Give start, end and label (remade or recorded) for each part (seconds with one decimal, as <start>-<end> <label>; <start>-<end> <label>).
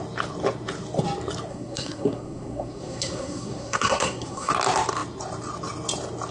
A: 0.0-1.5 recorded; 1.5-4.5 remade; 4.5-6.3 recorded